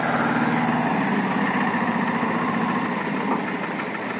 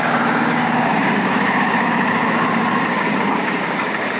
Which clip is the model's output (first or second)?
second